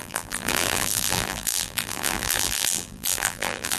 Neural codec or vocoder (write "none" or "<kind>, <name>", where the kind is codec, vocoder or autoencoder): vocoder, BigVGAN v2